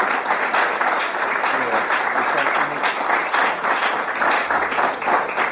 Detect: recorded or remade recorded